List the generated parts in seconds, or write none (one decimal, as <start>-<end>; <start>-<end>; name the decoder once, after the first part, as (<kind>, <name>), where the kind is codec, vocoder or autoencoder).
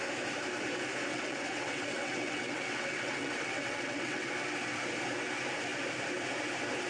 1.1-4.3 (vocoder, WaveNeXt)